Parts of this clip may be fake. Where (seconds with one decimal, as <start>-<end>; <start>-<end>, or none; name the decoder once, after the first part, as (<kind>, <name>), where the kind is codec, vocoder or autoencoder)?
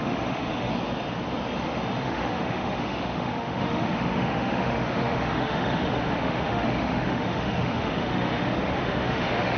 0.0-0.7 (autoencoder, DAC-VAE); 2.0-9.6